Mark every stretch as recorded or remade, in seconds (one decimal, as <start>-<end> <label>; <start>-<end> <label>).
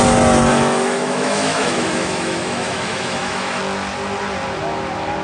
0.0-0.5 recorded; 0.5-3.6 remade; 3.6-5.2 recorded